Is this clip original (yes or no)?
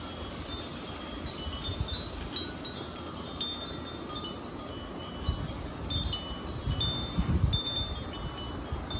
yes